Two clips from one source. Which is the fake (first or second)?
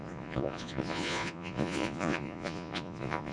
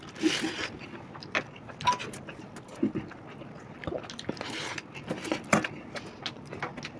first